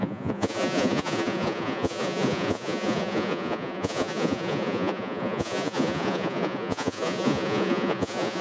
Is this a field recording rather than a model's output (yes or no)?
no